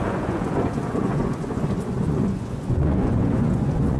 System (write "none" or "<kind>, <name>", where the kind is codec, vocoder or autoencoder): vocoder, Vocos